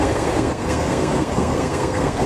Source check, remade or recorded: remade